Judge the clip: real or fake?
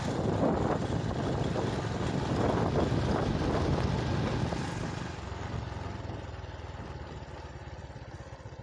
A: real